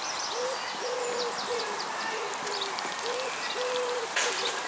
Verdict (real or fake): real